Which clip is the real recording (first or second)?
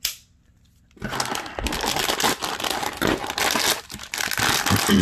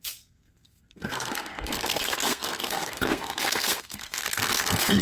first